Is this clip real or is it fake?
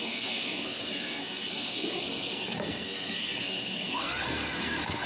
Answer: fake